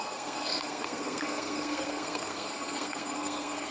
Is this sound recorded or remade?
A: remade